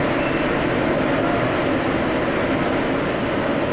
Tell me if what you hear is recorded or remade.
recorded